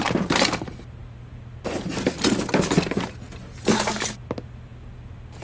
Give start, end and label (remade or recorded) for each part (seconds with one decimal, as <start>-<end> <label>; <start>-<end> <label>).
0.0-5.4 recorded